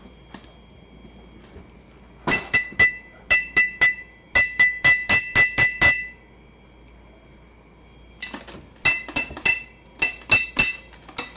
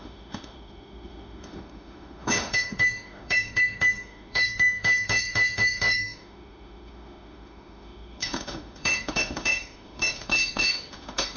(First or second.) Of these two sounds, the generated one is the second